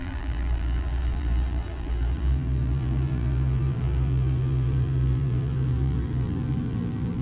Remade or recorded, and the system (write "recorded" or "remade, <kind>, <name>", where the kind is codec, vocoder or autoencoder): remade, vocoder, BigVGAN v2